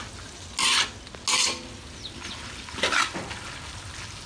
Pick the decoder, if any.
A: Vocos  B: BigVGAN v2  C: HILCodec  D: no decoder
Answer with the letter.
D